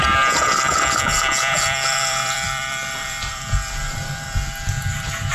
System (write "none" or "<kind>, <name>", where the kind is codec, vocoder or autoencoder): vocoder, BigVGAN v2